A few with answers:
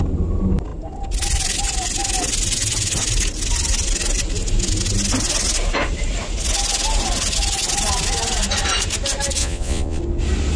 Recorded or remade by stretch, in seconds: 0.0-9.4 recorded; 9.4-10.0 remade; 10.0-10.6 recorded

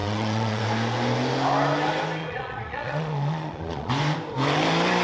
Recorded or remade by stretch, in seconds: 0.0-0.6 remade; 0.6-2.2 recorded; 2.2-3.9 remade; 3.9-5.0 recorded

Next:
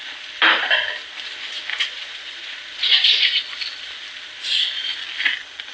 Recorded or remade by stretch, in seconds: 0.0-1.7 recorded; 1.7-3.4 remade; 3.4-5.7 recorded

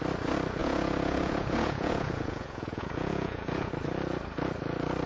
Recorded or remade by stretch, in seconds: 0.0-0.6 recorded; 0.6-3.7 remade; 3.7-5.1 recorded

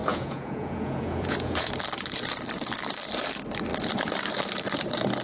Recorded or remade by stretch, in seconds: 0.0-1.7 remade; 1.7-5.2 recorded

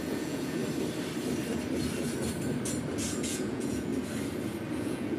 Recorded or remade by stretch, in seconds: 0.0-0.6 remade; 0.6-3.2 recorded; 3.2-3.9 remade; 3.9-4.8 recorded; 4.8-5.2 remade

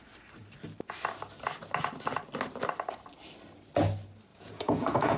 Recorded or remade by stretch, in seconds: 0.0-4.3 recorded; 4.3-5.2 remade

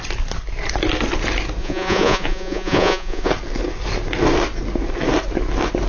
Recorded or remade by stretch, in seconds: 0.0-1.6 recorded; 1.6-3.3 remade; 3.3-5.9 recorded